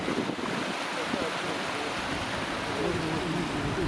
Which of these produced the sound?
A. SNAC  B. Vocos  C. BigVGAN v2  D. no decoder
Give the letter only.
D